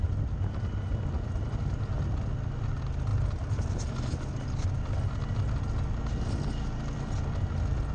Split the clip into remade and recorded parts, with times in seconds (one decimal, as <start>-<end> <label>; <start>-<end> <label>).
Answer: 0.0-7.9 recorded